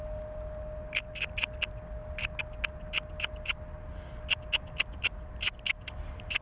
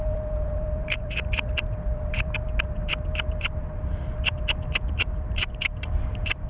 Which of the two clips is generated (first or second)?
second